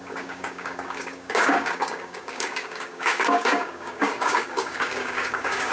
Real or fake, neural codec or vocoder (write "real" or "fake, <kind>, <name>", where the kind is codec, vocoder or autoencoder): fake, codec, DAC